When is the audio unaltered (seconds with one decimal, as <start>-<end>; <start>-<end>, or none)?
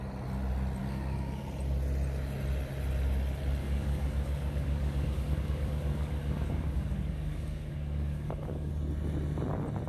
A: 0.0-0.8; 1.4-3.6; 8.7-9.9